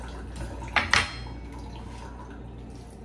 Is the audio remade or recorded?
recorded